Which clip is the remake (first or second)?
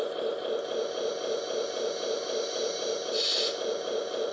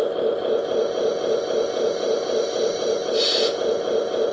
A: first